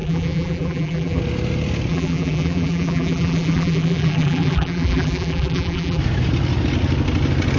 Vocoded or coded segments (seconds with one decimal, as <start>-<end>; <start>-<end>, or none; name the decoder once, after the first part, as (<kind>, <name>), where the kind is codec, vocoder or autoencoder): 0.0-1.2 (vocoder, BigVGAN v2); 1.9-6.0